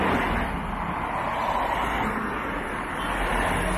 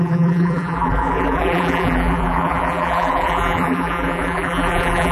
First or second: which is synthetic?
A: second